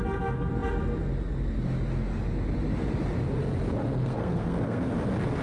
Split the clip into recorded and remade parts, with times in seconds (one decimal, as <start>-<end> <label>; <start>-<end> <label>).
0.0-4.0 recorded; 4.0-4.9 remade; 4.9-5.4 recorded